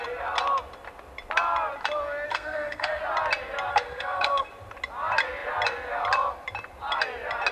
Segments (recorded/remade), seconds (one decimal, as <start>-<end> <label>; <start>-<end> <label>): 0.0-2.3 recorded; 2.3-3.0 remade; 3.0-3.7 recorded; 3.7-4.5 remade; 4.5-7.5 recorded